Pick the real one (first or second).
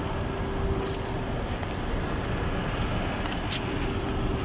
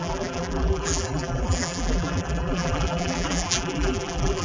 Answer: first